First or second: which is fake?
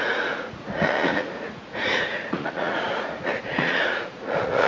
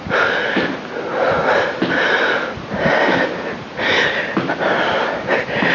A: first